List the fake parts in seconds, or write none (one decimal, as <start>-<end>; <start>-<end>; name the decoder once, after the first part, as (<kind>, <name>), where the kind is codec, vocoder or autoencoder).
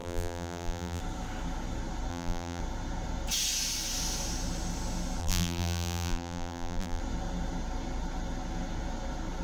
0.0-1.0 (vocoder, BigVGAN v2); 2.1-2.6; 5.2-7.0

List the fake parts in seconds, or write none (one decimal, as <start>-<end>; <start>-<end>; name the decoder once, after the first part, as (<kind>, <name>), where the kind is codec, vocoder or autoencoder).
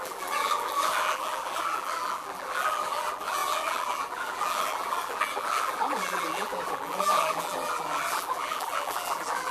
0.0-9.5 (vocoder, BigVGAN v2)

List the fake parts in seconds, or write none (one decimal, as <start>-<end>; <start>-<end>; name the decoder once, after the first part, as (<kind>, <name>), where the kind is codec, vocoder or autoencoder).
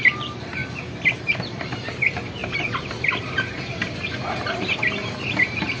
0.0-0.6 (vocoder, BigVGAN v2); 1.2-5.8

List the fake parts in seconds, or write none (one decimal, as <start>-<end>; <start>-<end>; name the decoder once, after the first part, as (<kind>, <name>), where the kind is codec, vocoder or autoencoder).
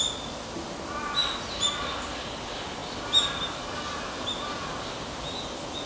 none